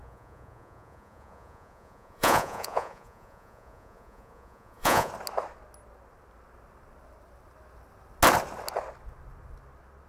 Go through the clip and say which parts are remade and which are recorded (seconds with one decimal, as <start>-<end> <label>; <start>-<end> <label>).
0.0-5.1 remade; 5.1-10.1 recorded